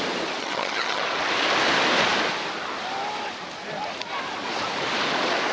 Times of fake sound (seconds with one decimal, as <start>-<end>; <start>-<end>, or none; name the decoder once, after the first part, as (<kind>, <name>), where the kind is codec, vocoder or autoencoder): 0.4-1.0 (vocoder, HiFi-GAN)